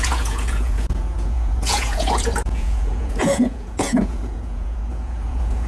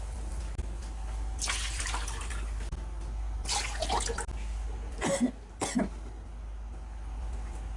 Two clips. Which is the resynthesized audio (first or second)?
first